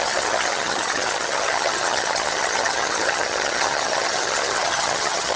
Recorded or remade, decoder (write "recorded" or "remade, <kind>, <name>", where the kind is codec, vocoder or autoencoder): remade, vocoder, HiFi-GAN